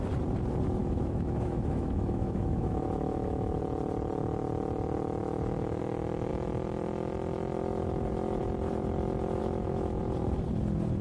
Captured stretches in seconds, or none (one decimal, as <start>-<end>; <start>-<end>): 0.0-0.8; 3.6-5.2; 5.8-9.4; 10.0-11.0